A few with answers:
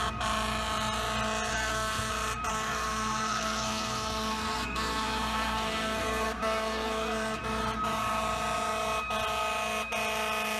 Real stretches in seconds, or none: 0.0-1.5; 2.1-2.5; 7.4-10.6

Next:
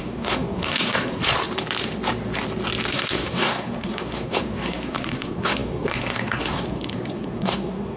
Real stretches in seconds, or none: 1.2-2.9

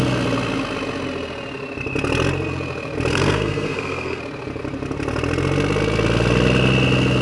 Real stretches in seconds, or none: 0.0-3.1; 4.2-7.2

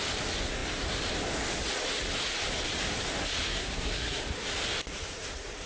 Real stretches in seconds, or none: 0.0-3.5; 4.2-5.7

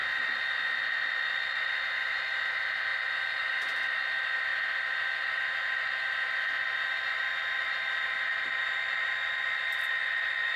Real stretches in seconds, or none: 0.0-10.6

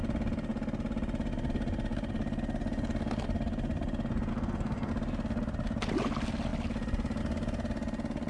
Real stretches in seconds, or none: 0.0-4.3; 4.9-8.3

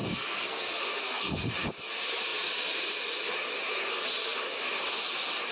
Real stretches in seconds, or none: 1.5-5.5